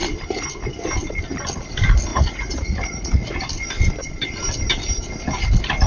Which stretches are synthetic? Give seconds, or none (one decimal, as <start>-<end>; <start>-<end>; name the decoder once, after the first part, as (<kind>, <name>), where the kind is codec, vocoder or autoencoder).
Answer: 2.1-3.4 (vocoder, Vocos)